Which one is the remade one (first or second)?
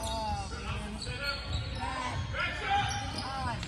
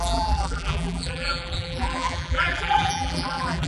second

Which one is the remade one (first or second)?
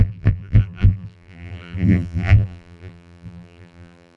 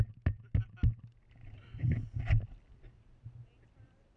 first